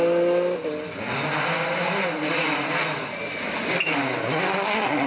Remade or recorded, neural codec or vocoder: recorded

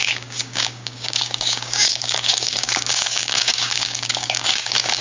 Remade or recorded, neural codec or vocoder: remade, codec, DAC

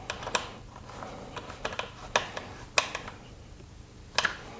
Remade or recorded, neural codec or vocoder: recorded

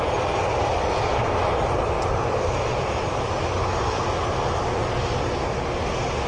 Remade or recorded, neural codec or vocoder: recorded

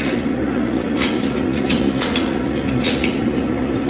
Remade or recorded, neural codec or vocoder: remade, vocoder, Vocos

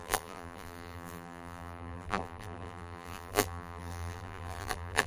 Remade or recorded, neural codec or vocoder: remade, vocoder, BigVGAN v2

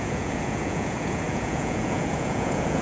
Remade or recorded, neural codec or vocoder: remade, vocoder, Vocos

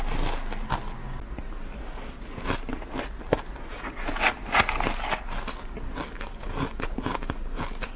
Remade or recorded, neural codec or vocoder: recorded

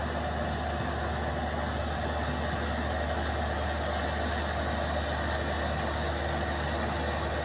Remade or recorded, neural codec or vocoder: recorded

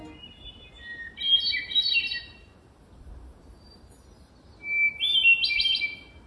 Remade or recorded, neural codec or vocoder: recorded